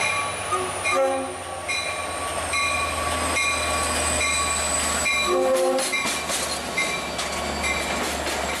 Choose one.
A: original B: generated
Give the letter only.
A